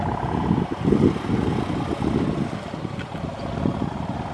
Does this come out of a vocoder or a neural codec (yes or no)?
no